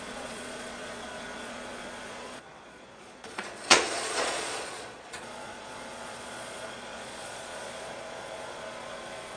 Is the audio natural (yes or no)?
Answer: no